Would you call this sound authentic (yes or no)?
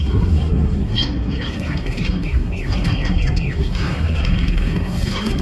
no